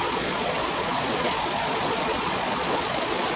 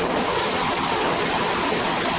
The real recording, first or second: second